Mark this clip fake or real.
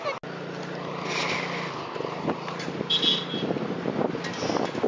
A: real